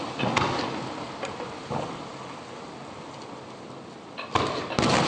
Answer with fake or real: real